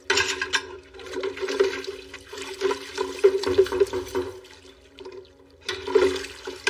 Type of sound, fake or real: real